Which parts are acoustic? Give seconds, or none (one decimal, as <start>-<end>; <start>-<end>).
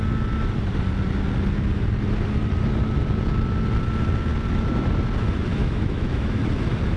0.0-5.5; 6.4-7.0